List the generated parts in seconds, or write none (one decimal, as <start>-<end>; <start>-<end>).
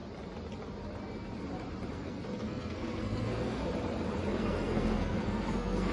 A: 1.9-3.6; 4.3-5.9